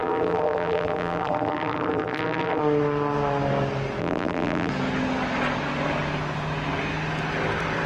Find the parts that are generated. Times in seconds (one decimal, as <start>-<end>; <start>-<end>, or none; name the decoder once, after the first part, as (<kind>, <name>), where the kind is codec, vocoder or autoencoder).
0.0-2.6 (vocoder, BigVGAN v2); 4.0-4.7